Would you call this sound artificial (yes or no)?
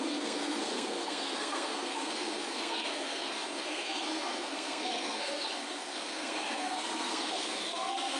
yes